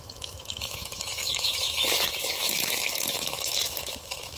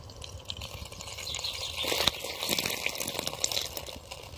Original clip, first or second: second